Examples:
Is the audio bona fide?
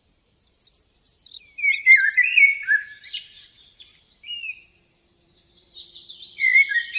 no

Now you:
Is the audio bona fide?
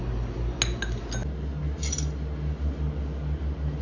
yes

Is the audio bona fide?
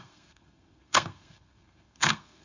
no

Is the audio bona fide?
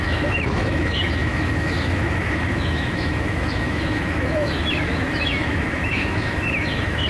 no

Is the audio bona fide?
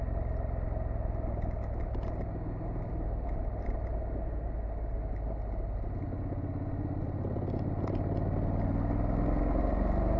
yes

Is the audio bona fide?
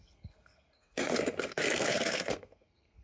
no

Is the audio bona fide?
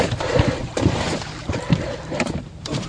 no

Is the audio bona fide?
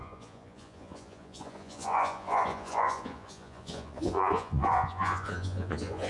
no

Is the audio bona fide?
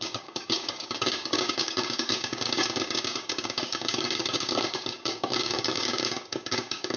no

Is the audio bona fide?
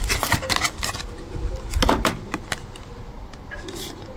yes